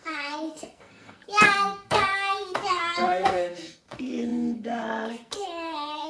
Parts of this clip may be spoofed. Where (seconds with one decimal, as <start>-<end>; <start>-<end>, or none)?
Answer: 0.0-6.1